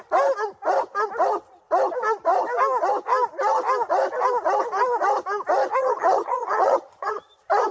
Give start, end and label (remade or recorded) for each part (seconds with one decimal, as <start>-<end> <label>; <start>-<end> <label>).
0.0-5.8 recorded; 5.8-7.2 remade; 7.2-7.7 recorded